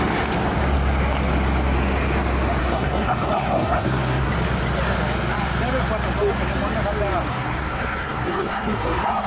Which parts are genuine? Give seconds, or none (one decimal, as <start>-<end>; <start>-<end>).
0.0-2.6; 4.3-7.3